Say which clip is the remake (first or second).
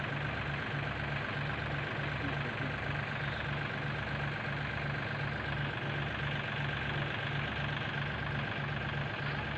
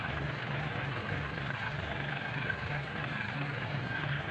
second